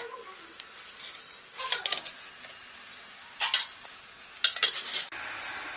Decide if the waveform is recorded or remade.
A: recorded